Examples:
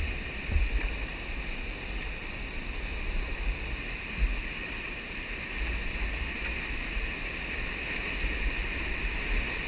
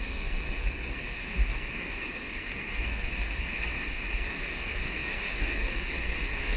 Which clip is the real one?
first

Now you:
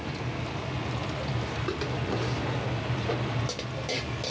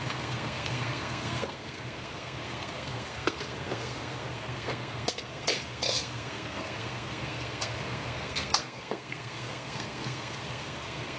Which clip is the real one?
first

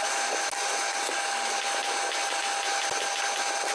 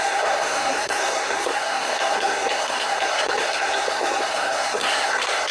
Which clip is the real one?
first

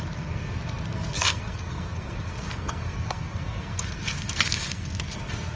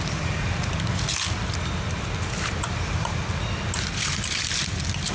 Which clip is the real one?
second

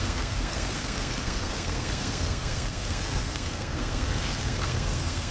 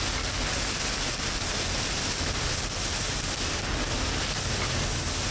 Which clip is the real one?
second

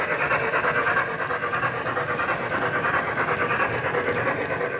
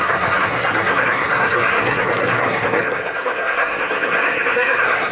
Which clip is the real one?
first